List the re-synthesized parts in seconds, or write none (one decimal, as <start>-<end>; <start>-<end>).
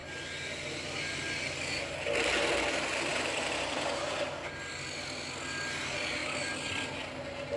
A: 3.1-4.0